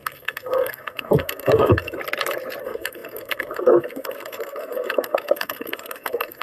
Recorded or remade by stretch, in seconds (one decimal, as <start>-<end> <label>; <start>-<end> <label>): 0.0-2.0 remade; 2.0-2.6 recorded; 2.6-6.4 remade